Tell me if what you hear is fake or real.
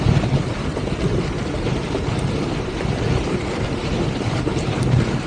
fake